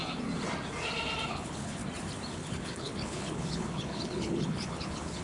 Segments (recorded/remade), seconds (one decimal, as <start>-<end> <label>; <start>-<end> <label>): 0.0-1.3 recorded; 1.3-1.8 remade; 1.8-2.3 recorded; 2.3-5.2 remade